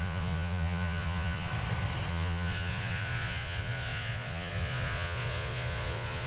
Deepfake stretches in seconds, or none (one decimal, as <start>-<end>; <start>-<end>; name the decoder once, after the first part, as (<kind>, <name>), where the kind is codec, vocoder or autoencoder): 0.0-1.5 (vocoder, Vocos); 2.1-6.3